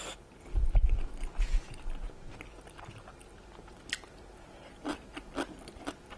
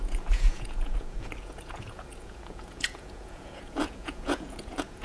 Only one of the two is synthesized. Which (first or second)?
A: second